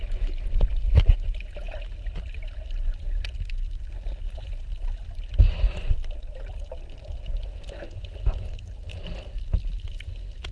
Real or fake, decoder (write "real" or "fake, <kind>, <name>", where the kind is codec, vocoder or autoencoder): real